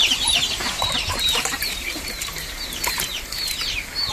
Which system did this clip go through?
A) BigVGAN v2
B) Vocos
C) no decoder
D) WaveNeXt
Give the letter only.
A